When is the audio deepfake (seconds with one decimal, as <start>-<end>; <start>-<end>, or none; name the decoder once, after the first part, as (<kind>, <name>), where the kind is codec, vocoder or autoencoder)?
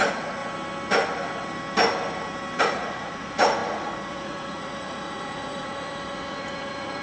0.0-0.4 (vocoder, Vocos); 2.6-7.0